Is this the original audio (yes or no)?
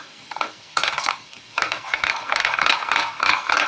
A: no